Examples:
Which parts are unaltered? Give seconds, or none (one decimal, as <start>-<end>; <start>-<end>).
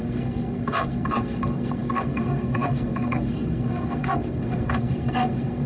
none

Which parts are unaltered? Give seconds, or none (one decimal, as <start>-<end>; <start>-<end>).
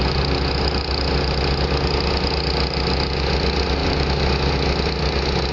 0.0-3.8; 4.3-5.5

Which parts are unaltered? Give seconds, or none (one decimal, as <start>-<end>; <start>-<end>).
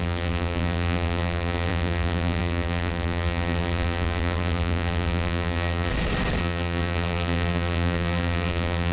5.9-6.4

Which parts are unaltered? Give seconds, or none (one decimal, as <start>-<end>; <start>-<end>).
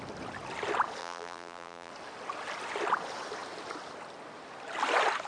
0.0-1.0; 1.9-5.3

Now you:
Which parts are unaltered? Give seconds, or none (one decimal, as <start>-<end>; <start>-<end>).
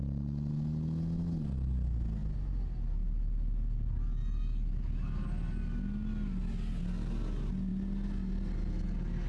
0.0-9.3